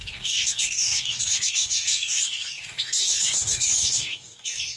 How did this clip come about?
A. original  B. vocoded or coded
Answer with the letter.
B